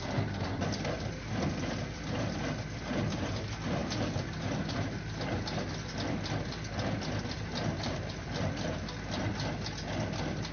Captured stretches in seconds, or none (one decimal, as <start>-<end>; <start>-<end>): 0.0-10.5